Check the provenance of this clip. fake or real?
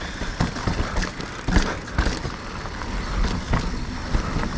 real